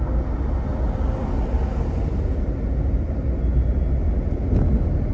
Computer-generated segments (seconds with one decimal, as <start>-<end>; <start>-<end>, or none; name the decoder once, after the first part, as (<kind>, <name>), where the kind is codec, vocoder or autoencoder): none